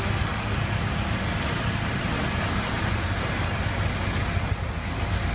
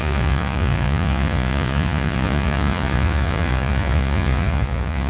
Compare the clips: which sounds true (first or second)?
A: first